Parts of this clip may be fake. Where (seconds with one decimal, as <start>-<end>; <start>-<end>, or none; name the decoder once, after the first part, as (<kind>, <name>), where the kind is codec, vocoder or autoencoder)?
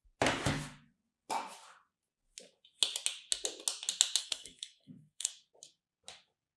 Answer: 4.2-5.3 (codec, SNAC)